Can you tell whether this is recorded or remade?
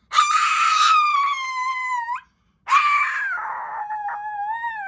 recorded